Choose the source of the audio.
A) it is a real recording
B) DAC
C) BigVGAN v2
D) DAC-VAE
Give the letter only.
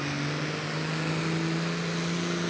A